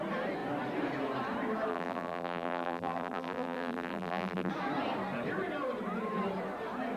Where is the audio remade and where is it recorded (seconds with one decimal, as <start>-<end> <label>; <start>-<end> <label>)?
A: 0.0-1.7 recorded; 1.7-4.5 remade; 4.5-7.0 recorded